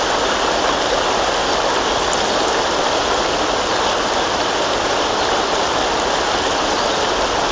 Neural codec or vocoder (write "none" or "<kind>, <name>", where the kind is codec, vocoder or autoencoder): none